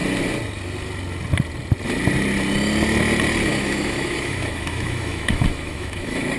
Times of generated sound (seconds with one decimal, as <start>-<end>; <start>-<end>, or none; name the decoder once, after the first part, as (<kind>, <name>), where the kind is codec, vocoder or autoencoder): 3.5-6.4 (autoencoder, DAC-VAE)